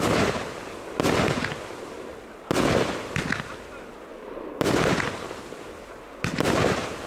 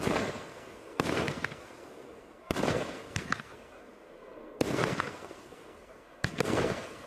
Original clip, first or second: first